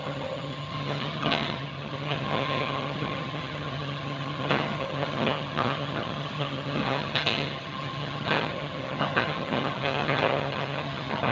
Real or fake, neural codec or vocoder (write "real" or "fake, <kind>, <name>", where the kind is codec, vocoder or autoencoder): fake, vocoder, HiFi-GAN